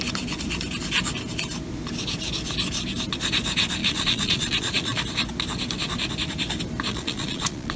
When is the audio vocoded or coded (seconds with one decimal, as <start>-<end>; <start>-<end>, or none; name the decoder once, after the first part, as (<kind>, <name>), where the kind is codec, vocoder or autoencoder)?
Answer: 3.8-5.0 (vocoder, Vocos); 6.9-7.8